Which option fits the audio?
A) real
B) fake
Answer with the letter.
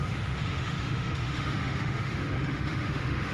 B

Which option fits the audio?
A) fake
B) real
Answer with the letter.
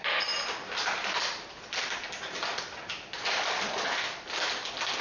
B